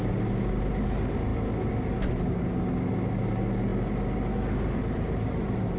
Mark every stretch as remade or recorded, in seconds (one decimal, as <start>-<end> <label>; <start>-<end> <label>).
0.0-5.8 recorded